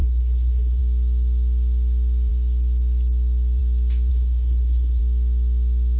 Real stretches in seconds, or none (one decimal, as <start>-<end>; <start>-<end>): 0.8-4.1; 5.0-6.0

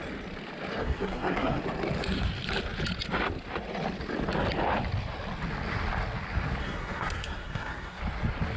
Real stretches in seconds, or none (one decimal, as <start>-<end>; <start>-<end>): 0.0-0.8; 1.6-6.6; 8.0-8.6

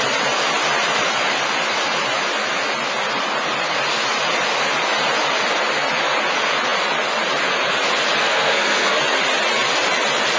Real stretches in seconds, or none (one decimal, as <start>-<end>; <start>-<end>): 0.0-8.2; 9.0-10.4

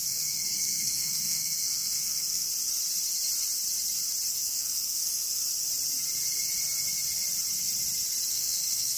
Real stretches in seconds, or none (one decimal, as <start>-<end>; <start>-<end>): 2.5-4.3; 5.4-8.3